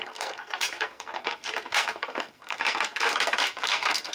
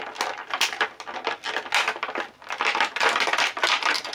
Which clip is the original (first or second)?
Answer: second